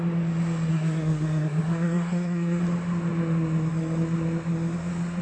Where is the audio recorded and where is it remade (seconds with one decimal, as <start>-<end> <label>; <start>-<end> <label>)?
0.0-0.7 recorded; 0.7-2.6 remade; 2.6-5.2 recorded